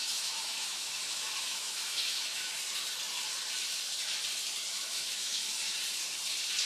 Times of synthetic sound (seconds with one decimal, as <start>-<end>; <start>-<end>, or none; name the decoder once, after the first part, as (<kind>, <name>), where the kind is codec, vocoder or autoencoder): 0.0-2.5 (autoencoder, DAC-VAE); 4.7-5.7